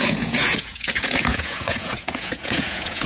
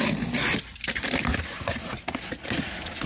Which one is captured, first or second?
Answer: second